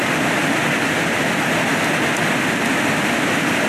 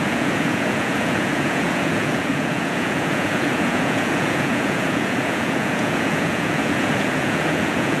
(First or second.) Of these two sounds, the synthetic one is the second